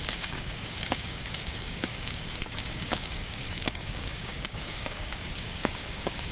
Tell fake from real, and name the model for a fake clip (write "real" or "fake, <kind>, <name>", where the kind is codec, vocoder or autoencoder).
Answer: fake, codec, DAC